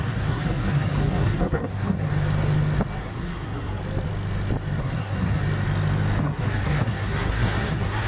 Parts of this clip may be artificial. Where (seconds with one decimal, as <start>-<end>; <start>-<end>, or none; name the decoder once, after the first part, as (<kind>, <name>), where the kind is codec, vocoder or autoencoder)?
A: 0.0-2.1 (codec, SNAC); 3.0-3.8; 4.8-5.4; 6.2-8.1